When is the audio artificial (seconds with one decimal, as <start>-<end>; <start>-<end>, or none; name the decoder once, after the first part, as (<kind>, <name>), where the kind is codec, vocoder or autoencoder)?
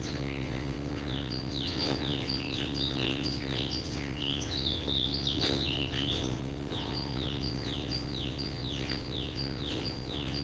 0.0-10.4 (vocoder, WaveNeXt)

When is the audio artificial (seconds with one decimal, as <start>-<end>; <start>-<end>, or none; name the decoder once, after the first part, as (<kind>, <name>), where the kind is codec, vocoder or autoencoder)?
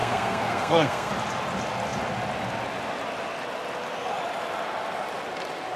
0.0-1.1 (codec, SNAC)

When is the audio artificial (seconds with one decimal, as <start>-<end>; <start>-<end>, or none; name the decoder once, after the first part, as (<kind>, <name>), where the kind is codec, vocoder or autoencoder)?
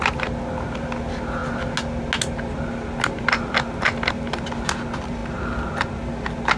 none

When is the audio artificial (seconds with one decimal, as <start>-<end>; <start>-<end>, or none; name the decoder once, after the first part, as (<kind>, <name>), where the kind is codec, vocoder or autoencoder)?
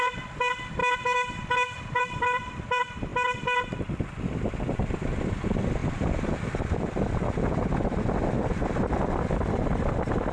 0.0-0.8 (vocoder, BigVGAN v2); 2.0-3.1; 3.9-10.3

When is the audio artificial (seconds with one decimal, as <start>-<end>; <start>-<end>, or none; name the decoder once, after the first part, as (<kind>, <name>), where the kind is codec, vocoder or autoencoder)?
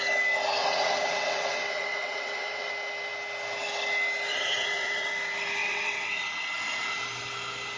0.6-2.7 (vocoder, WaveNeXt); 4.3-5.1; 5.6-6.2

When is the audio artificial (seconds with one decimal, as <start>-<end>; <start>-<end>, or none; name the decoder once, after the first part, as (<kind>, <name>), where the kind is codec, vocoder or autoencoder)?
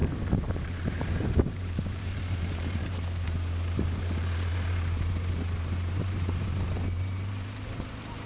0.0-8.3 (vocoder, BigVGAN v2)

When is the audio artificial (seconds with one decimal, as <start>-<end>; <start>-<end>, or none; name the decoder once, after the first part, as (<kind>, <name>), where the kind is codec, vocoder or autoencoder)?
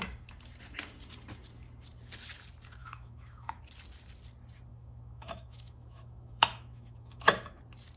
2.8-3.6 (autoencoder, DAC-VAE); 4.7-7.6